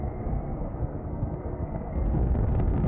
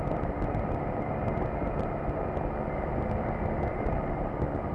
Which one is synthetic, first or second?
first